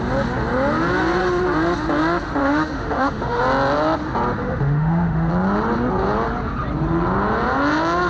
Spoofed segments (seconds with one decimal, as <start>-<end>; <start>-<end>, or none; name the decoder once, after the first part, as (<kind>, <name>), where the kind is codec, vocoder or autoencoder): 2.4-3.4 (autoencoder, DAC-VAE); 4.4-5.3